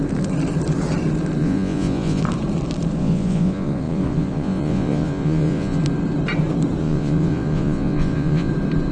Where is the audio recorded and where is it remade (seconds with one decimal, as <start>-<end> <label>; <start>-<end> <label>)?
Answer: 0.0-1.4 recorded; 1.4-2.2 remade; 2.2-3.0 recorded; 3.0-5.8 remade; 5.8-6.8 recorded; 6.8-8.5 remade; 8.5-8.9 recorded